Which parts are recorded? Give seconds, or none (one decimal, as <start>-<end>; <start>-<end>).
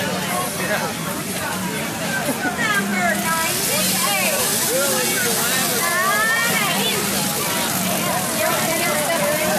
0.0-9.6